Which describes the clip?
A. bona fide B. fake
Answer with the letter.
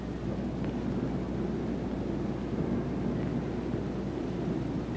A